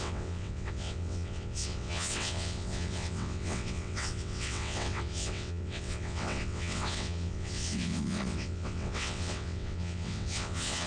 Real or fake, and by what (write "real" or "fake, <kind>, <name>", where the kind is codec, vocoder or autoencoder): fake, vocoder, WaveNeXt